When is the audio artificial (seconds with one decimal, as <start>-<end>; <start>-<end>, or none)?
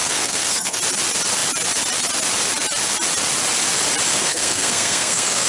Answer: 0.0-0.8; 4.1-5.5